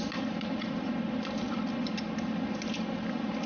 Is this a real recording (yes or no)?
yes